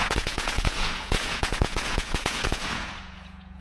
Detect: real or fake fake